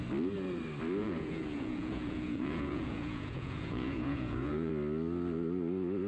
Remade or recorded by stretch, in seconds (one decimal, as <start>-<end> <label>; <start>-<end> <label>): 0.0-1.0 recorded; 1.0-4.7 remade; 4.7-6.1 recorded